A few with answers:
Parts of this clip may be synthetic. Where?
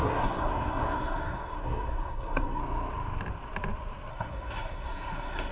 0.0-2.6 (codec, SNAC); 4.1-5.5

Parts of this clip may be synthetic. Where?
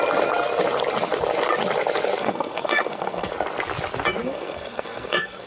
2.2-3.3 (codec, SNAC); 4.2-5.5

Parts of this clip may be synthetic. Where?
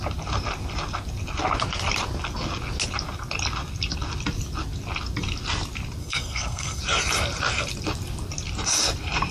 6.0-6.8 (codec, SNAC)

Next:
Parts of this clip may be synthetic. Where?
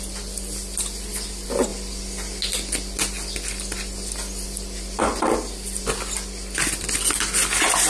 none